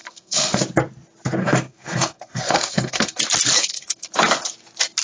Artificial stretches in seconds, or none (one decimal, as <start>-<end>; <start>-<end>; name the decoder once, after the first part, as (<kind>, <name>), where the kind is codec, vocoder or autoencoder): 0.0-0.6 (codec, SNAC); 1.4-3.2; 3.6-4.1